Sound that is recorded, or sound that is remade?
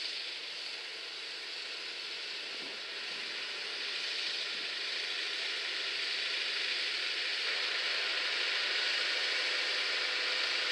recorded